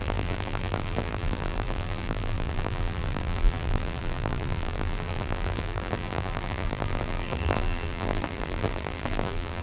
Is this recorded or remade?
remade